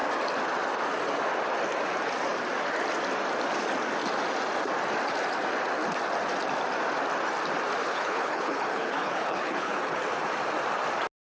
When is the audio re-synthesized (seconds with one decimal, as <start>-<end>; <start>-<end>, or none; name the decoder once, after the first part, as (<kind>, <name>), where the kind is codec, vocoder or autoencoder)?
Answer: 7.8-10.0 (codec, HILCodec)